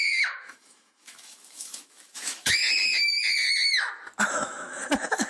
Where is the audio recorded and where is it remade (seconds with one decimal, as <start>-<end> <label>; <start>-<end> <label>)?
0.0-2.6 remade; 2.6-4.2 recorded; 4.2-5.3 remade